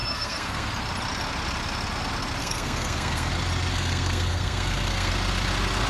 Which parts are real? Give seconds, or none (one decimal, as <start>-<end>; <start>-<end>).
0.7-2.4; 3.3-3.7; 5.1-5.9